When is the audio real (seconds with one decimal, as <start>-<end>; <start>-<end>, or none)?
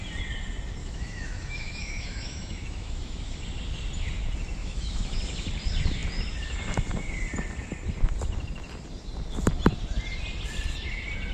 0.0-0.8; 3.4-4.6; 5.2-11.3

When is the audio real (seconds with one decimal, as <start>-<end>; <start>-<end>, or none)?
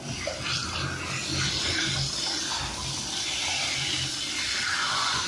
0.0-4.8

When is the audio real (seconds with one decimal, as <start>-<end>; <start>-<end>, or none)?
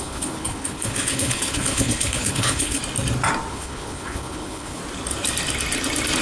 2.8-3.5; 4.8-6.2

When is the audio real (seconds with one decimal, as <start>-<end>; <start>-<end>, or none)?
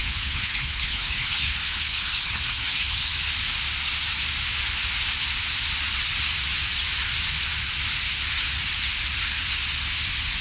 3.1-10.4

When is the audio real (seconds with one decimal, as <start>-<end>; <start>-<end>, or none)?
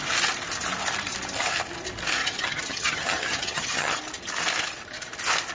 0.0-2.2; 4.0-5.5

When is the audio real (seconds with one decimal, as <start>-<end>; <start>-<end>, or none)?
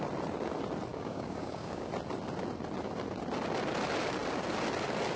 0.0-0.9; 1.9-5.2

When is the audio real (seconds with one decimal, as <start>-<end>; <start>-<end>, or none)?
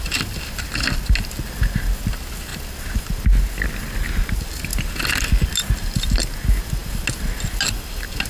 0.0-8.3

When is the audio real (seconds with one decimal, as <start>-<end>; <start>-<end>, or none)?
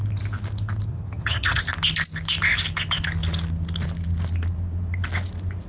0.0-0.9; 1.6-5.7